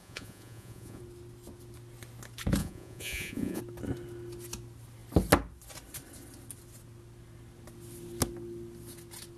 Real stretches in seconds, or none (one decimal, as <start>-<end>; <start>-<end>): 1.0-2.6; 3.6-9.4